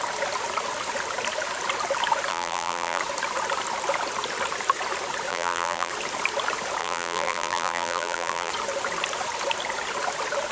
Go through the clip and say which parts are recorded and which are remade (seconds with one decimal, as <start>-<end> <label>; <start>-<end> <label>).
0.0-2.3 recorded; 2.3-3.0 remade; 3.0-5.3 recorded; 5.3-5.9 remade; 5.9-6.8 recorded; 6.8-8.5 remade; 8.5-10.5 recorded